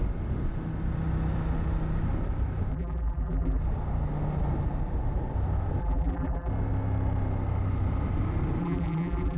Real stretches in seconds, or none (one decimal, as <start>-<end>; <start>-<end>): 0.0-2.7; 3.6-5.8; 6.5-8.6